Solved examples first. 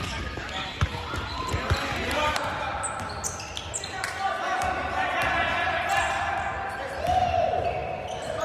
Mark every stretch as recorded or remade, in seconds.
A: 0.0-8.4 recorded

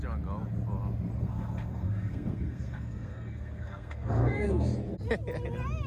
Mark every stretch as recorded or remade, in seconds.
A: 0.0-1.2 recorded; 1.2-4.7 remade; 4.7-5.9 recorded

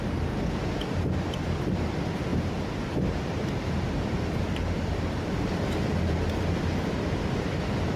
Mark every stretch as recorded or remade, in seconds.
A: 0.0-2.3 recorded; 2.3-6.2 remade; 6.2-8.0 recorded

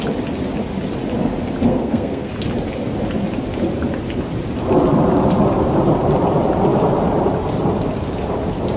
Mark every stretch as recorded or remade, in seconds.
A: 0.0-1.7 recorded; 1.7-2.3 remade; 2.3-8.8 recorded

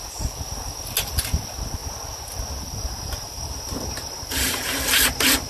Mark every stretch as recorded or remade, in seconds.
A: 0.0-5.5 recorded

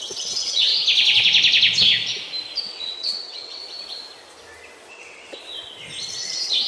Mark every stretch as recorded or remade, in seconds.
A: 0.0-0.7 remade; 0.7-2.6 recorded; 2.6-3.6 remade; 3.6-4.9 recorded; 4.9-5.4 remade; 5.4-6.0 recorded; 6.0-6.7 remade

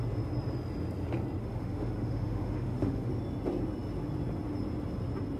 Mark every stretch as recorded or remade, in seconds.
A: 0.0-1.4 recorded; 1.4-3.1 remade; 3.1-5.4 recorded